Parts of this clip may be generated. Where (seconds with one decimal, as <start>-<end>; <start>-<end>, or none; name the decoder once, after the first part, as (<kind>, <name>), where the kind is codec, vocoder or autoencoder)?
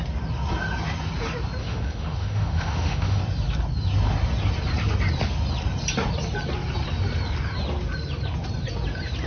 1.6-3.2 (autoencoder, DAC-VAE)